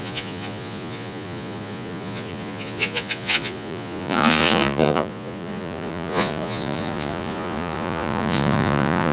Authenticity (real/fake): fake